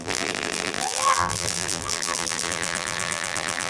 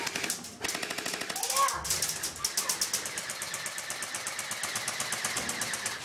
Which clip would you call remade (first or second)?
first